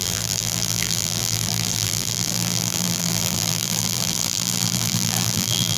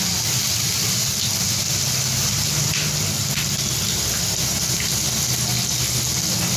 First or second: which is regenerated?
first